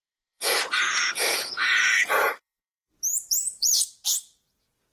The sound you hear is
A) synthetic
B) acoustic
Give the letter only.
A